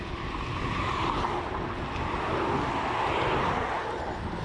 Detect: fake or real real